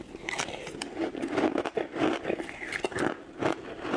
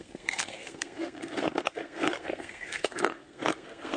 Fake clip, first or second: second